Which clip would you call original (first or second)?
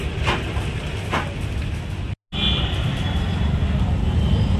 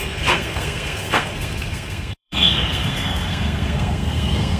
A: first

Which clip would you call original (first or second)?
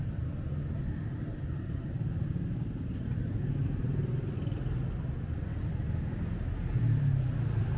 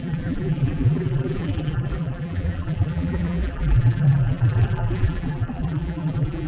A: first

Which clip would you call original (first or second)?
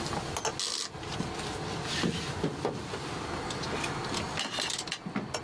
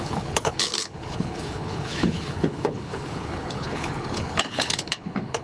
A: first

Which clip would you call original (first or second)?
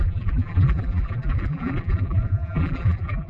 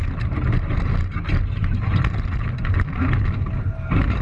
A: second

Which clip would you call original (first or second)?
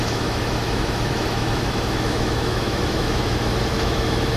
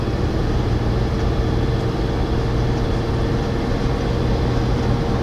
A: second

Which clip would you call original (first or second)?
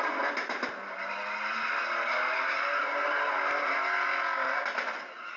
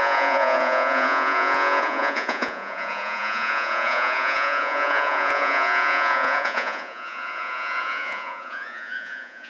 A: first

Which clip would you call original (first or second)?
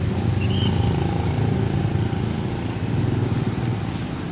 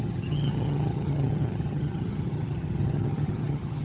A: first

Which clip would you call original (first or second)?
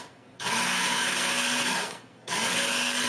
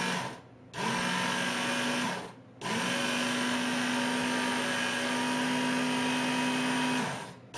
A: second